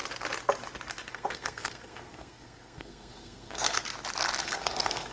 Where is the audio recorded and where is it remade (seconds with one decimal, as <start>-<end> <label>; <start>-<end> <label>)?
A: 0.0-1.1 recorded; 1.1-3.9 remade; 3.9-4.4 recorded; 4.4-5.1 remade